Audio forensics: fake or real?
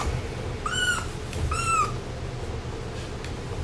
real